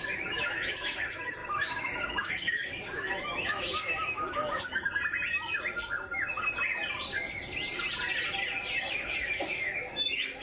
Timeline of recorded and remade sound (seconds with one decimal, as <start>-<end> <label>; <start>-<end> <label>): 0.0-4.7 remade; 4.7-8.9 recorded; 8.9-10.4 remade